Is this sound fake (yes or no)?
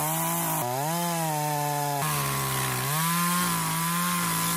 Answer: no